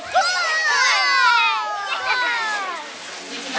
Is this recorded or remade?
recorded